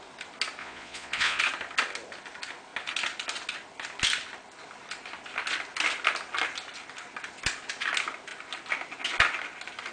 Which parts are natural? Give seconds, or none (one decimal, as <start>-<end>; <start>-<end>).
0.0-0.6; 1.4-9.9